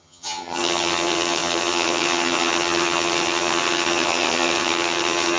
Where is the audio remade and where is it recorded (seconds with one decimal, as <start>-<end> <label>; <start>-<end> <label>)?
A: 0.0-5.4 remade

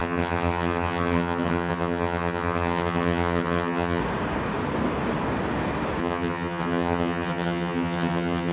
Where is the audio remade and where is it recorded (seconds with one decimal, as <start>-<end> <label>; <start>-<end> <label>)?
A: 0.0-4.0 remade; 4.0-6.0 recorded; 6.0-8.5 remade

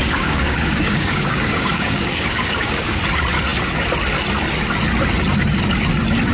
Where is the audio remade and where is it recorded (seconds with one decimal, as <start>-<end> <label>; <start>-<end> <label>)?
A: 0.0-3.0 remade; 3.0-6.3 recorded

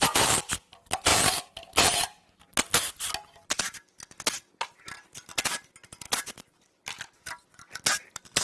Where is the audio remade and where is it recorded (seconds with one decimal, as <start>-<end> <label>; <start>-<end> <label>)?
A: 0.0-8.4 recorded

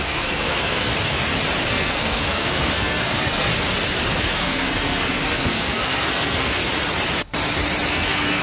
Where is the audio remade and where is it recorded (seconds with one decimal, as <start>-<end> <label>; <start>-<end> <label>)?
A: 0.0-0.9 remade; 0.9-1.7 recorded; 1.7-3.5 remade; 3.5-4.2 recorded; 4.2-6.6 remade; 6.6-7.9 recorded; 7.9-8.4 remade

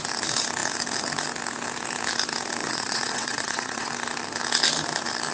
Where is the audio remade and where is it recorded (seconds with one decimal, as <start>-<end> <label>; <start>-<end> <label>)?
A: 0.0-2.6 recorded; 2.6-3.9 remade; 3.9-5.3 recorded

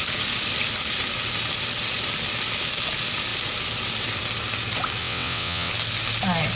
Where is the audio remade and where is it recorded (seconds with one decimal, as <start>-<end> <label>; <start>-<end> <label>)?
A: 0.0-5.0 recorded; 5.0-5.7 remade; 5.7-6.6 recorded

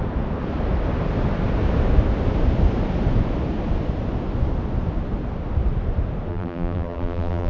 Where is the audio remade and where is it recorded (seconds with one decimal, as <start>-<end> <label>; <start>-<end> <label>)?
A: 0.0-6.3 recorded; 6.3-7.5 remade